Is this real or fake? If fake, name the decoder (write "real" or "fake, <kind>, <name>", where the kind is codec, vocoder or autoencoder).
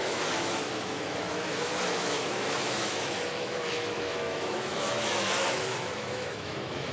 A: fake, autoencoder, DAC-VAE